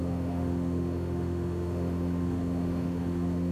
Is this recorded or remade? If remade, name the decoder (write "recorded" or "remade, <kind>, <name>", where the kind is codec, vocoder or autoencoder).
remade, autoencoder, DAC-VAE